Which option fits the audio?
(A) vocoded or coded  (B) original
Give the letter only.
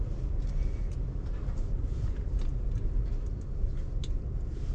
B